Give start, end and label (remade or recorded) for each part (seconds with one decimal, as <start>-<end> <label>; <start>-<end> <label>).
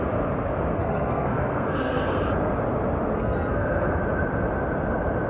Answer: 0.0-0.7 recorded; 0.7-2.2 remade; 2.2-3.2 recorded; 3.2-4.0 remade; 4.0-5.3 recorded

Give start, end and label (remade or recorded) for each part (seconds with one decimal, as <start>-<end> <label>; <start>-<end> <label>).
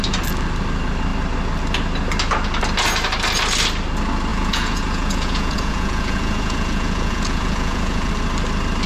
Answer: 0.0-4.3 recorded; 4.3-8.1 remade; 8.1-8.9 recorded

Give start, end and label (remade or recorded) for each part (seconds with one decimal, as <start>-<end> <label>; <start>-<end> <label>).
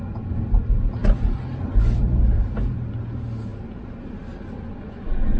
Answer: 0.0-1.0 recorded; 1.0-2.5 remade; 2.5-3.5 recorded; 3.5-4.8 remade; 4.8-5.4 recorded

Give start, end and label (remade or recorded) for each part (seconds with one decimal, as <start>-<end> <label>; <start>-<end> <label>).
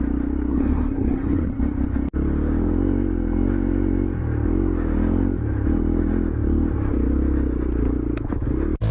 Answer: 0.0-0.5 recorded; 0.5-1.6 remade; 1.6-8.9 recorded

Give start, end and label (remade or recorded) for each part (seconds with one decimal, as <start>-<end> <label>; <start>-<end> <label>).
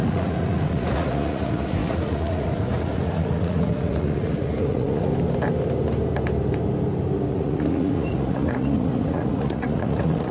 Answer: 0.0-5.1 remade; 5.1-7.3 recorded; 7.3-10.3 remade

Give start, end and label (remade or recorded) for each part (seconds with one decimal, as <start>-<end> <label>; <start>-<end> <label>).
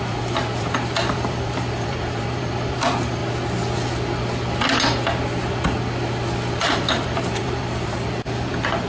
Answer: 0.0-3.2 remade; 3.2-6.6 recorded; 6.6-8.9 remade